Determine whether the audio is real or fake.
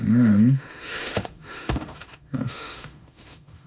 fake